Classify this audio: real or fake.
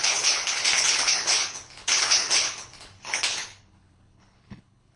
fake